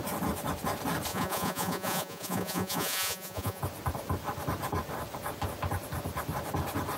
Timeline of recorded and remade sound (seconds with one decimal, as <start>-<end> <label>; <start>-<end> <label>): 0.0-1.1 recorded; 1.1-3.6 remade; 3.6-7.0 recorded